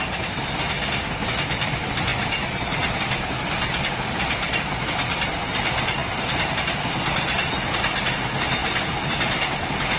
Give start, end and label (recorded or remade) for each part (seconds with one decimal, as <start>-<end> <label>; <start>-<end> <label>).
0.0-10.0 recorded